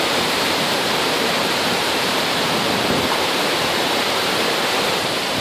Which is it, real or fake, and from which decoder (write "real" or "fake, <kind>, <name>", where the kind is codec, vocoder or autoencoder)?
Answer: fake, vocoder, BigVGAN v2